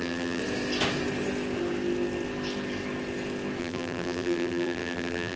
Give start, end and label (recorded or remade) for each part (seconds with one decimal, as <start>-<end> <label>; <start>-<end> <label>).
0.0-0.4 remade; 0.4-3.6 recorded; 3.6-5.4 remade